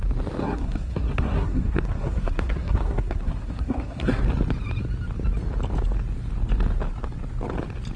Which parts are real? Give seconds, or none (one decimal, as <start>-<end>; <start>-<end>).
0.0-0.4; 4.2-8.0